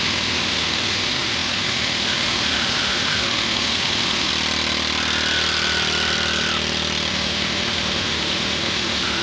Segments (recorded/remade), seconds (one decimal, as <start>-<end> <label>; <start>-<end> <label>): 0.0-4.3 remade; 4.3-7.1 recorded; 7.1-9.2 remade